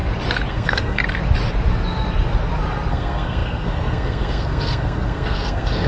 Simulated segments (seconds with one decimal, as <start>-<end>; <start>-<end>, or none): 0.5-1.0; 2.9-5.9